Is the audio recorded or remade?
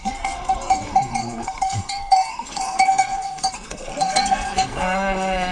remade